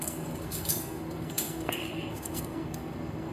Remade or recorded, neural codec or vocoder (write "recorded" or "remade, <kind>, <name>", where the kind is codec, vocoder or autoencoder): remade, codec, SNAC